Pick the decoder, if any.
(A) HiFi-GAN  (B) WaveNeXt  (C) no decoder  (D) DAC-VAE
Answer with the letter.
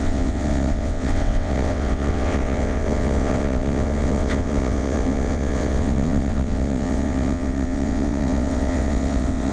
B